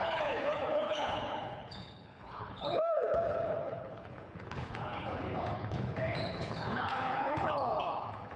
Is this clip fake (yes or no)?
yes